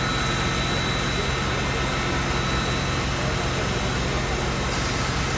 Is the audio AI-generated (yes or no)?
no